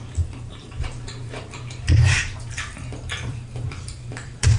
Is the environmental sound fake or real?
fake